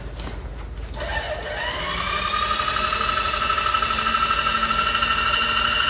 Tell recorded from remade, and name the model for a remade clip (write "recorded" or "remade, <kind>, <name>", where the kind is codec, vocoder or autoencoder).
recorded